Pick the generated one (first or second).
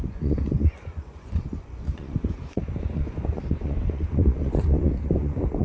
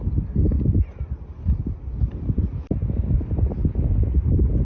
first